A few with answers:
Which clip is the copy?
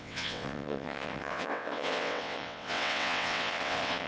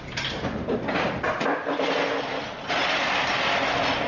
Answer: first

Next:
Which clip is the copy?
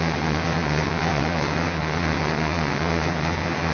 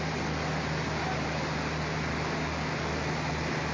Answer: first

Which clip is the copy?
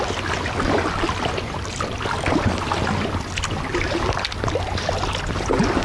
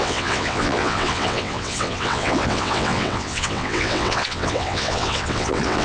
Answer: second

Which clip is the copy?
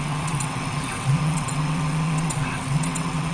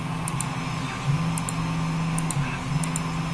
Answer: first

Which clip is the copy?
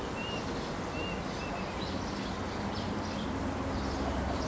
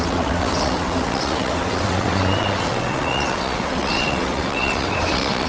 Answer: second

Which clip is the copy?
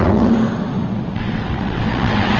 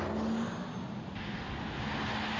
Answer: first